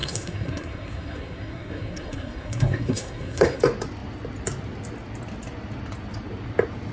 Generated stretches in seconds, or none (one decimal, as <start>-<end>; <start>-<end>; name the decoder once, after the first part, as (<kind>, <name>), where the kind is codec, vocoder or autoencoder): 0.0-3.6 (codec, SNAC)